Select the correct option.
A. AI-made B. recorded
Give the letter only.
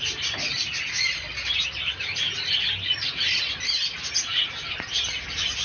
B